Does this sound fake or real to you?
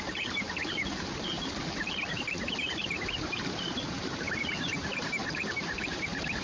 fake